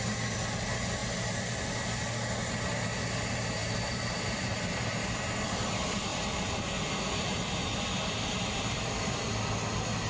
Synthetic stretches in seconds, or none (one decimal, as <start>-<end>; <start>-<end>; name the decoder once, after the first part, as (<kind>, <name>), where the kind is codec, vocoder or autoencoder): 1.0-1.5 (vocoder, BigVGAN v2); 3.6-5.2; 6.1-6.7; 7.7-9.2